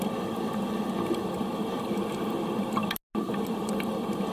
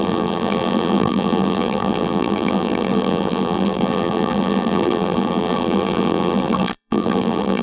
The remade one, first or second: second